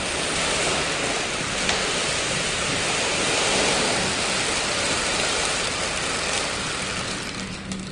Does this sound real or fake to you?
real